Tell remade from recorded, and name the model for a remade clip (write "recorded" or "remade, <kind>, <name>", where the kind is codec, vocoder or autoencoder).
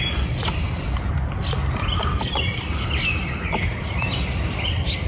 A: recorded